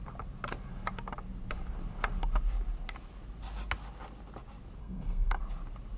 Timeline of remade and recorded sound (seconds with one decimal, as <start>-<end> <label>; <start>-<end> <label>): 0.0-4.8 recorded; 4.8-5.4 remade; 5.4-6.0 recorded